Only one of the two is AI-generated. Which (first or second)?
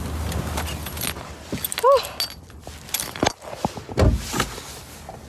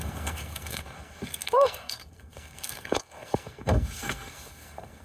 second